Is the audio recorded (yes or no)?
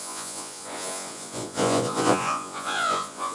no